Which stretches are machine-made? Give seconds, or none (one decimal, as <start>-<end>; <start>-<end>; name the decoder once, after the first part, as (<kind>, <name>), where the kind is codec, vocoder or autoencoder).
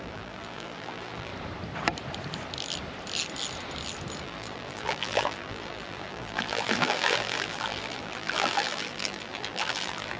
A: 0.0-1.3 (vocoder, BigVGAN v2); 4.2-10.2